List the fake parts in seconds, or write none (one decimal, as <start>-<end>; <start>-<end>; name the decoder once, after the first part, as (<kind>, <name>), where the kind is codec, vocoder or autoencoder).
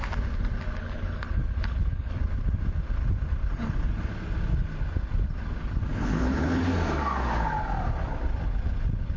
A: 0.8-2.2 (codec, HILCodec); 5.9-6.6